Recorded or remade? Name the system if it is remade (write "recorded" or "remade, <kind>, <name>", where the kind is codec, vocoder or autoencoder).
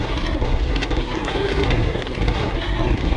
remade, codec, SNAC